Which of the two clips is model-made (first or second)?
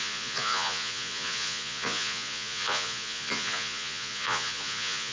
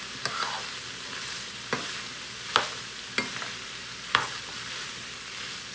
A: first